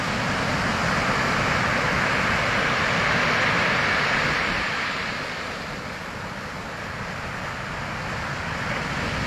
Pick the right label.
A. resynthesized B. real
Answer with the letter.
B